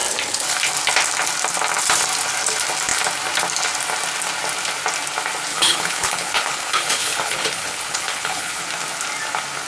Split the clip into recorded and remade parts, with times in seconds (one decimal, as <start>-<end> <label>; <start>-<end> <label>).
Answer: 0.0-5.5 recorded; 5.5-8.6 remade; 8.6-9.7 recorded